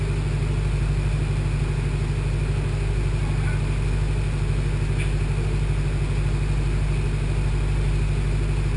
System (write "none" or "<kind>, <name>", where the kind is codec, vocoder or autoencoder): none